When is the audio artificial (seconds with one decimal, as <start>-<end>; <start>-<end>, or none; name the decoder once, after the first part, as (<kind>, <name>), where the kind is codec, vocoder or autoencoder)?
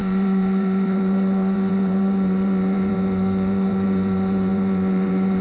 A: 0.0-5.4 (vocoder, BigVGAN v2)